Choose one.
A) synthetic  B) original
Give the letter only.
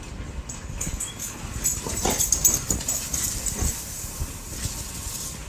B